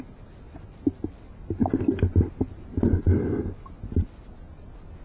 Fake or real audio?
real